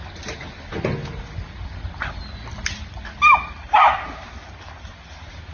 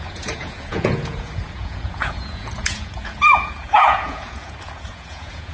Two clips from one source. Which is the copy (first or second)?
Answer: second